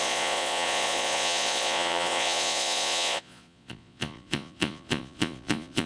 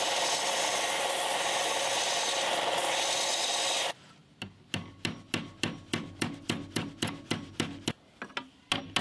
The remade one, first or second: first